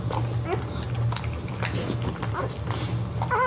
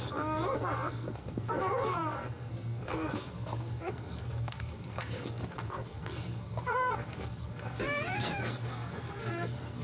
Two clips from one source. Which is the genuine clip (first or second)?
first